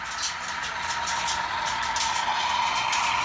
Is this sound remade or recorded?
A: recorded